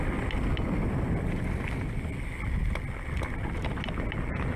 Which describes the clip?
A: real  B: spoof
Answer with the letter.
A